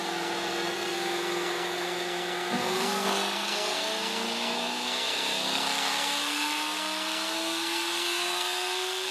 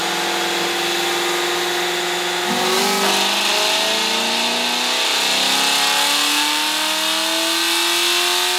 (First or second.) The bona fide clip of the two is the second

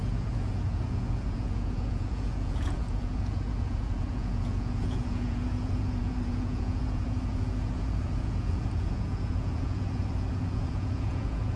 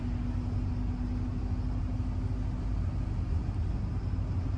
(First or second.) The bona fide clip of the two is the second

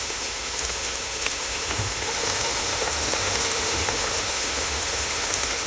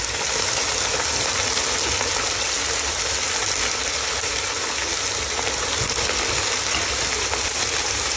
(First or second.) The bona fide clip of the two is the second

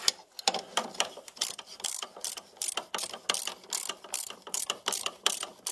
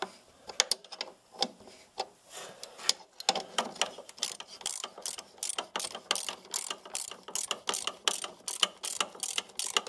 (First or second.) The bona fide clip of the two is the second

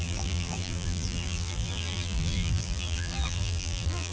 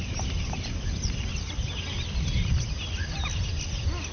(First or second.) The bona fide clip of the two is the second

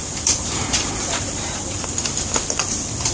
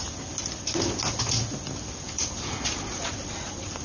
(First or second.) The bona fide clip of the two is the second